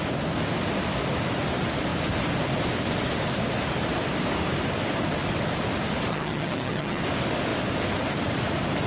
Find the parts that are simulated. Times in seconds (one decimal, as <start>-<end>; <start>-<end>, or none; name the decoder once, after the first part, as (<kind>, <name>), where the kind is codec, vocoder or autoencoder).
6.1-7.0 (vocoder, HiFi-GAN)